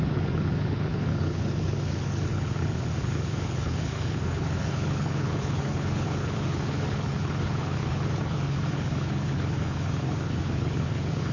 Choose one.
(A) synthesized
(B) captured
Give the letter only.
A